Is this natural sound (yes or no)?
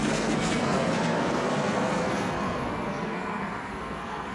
no